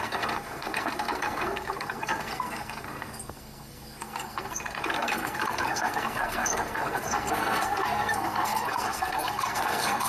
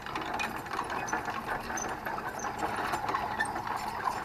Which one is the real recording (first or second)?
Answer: second